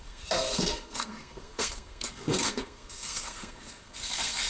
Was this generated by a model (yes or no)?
yes